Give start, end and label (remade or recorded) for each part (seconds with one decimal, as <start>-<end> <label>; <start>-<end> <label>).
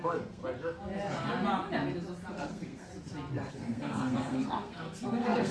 0.0-0.4 remade; 0.4-2.3 recorded; 2.3-2.9 remade; 2.9-3.5 recorded; 3.5-5.5 remade